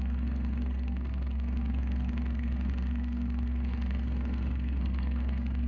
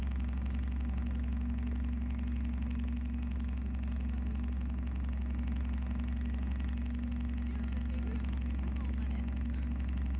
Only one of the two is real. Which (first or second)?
second